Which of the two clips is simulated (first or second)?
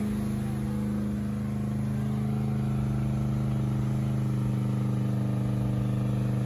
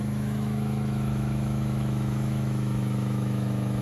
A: second